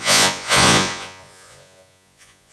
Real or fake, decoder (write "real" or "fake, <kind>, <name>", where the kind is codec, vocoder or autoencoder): fake, vocoder, Vocos